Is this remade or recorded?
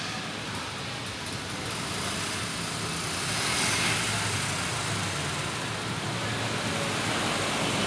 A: recorded